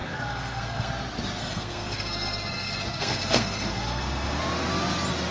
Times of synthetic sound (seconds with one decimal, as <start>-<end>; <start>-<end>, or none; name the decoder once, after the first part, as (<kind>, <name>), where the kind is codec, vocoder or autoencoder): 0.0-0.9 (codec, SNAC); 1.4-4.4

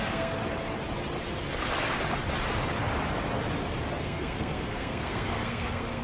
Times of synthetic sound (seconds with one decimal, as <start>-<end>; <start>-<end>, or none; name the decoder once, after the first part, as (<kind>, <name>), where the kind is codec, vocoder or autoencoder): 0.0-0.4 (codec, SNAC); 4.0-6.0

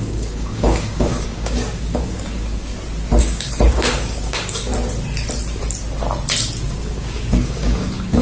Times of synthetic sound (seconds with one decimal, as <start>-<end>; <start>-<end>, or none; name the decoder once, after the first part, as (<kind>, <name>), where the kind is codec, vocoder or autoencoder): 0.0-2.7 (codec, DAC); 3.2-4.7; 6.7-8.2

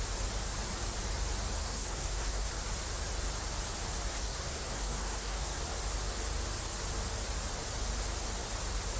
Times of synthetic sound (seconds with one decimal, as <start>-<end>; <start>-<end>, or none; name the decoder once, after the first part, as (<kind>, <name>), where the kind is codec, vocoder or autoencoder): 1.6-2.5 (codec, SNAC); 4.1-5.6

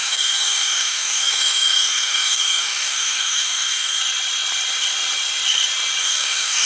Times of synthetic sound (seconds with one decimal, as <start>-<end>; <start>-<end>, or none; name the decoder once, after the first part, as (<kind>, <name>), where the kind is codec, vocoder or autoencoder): 0.0-4.0 (codec, DAC); 6.0-6.7

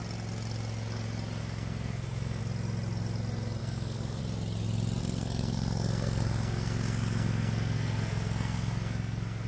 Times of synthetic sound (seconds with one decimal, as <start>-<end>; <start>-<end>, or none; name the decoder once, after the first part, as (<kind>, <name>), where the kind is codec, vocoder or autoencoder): 1.4-2.4 (codec, SNAC); 3.6-4.2; 5.0-9.5

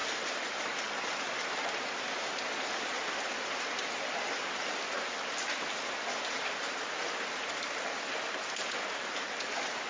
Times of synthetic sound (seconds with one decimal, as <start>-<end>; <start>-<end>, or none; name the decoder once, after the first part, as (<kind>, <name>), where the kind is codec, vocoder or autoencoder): none

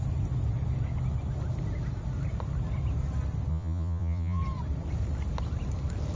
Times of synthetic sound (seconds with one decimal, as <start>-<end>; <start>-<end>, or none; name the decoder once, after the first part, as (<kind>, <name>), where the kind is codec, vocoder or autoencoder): 3.5-4.4 (vocoder, Vocos)